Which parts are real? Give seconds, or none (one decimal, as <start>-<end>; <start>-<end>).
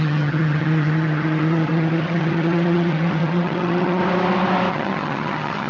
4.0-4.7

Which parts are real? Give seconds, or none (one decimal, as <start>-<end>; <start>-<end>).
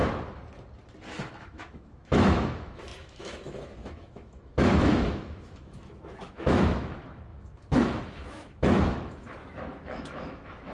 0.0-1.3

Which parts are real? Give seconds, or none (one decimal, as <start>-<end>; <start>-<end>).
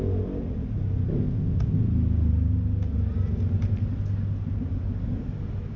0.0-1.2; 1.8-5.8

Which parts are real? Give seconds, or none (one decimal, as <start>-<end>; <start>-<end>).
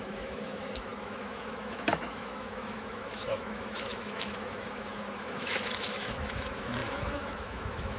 none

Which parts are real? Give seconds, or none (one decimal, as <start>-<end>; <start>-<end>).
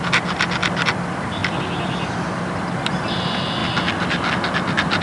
0.0-5.0